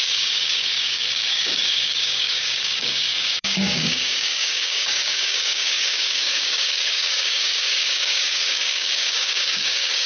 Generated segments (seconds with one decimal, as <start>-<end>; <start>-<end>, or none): 0.0-10.1